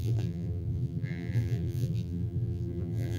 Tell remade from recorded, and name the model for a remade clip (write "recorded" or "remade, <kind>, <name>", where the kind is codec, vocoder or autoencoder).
remade, vocoder, BigVGAN v2